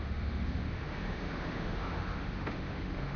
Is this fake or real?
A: fake